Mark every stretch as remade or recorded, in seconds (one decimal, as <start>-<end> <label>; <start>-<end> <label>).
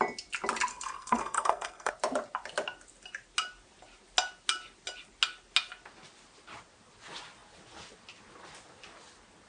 0.0-0.7 recorded; 0.7-1.9 remade; 1.9-9.5 recorded